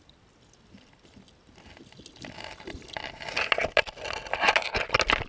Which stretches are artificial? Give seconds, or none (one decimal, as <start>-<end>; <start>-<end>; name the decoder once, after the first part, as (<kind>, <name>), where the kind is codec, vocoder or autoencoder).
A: none